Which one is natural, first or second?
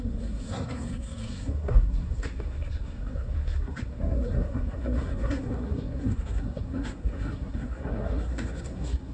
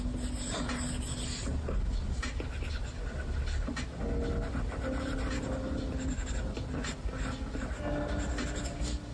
second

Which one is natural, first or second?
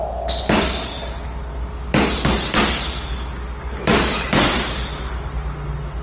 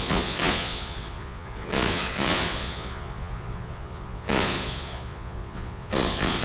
first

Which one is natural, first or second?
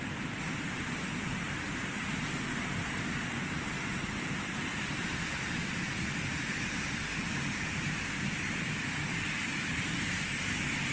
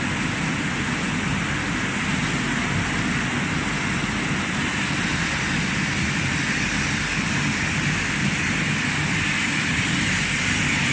second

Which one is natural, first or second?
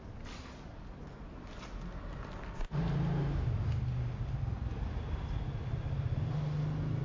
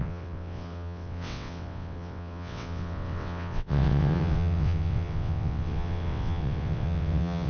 first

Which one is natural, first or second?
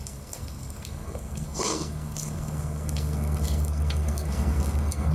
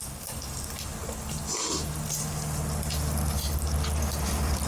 second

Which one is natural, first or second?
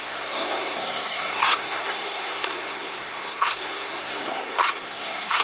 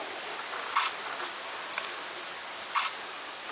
second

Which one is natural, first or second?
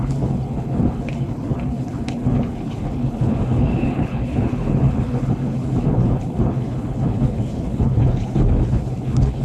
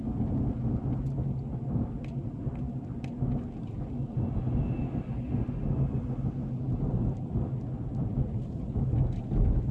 second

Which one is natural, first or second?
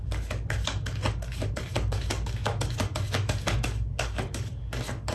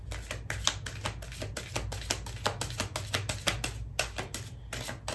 second